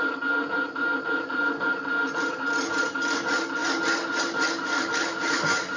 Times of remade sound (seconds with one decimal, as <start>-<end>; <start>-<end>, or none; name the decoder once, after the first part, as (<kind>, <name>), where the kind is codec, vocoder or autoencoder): none